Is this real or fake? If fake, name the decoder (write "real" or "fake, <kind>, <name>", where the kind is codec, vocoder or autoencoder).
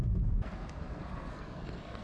fake, codec, SNAC